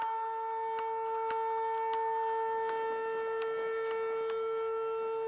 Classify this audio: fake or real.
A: real